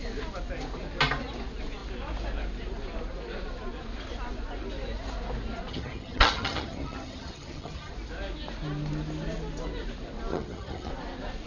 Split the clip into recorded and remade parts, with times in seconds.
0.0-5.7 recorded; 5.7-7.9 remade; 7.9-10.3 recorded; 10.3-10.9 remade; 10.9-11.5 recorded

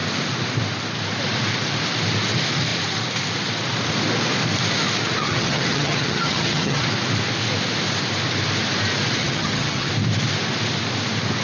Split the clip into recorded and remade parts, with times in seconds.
0.0-5.2 recorded; 5.2-6.9 remade; 6.9-9.2 recorded; 9.2-9.9 remade; 9.9-11.4 recorded

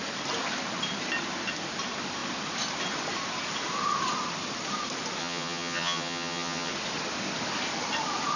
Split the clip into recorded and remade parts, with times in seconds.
0.0-5.2 recorded; 5.2-6.7 remade; 6.7-8.4 recorded